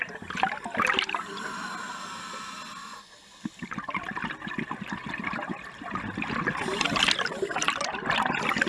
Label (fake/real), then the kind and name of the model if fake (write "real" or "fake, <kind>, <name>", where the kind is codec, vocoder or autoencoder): real